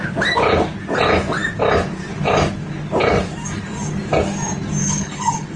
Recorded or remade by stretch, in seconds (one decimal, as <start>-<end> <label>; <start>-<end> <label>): 0.0-4.8 recorded; 4.8-5.6 remade